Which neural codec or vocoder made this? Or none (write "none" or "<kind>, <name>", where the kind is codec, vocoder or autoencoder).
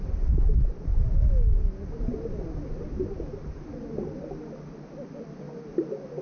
none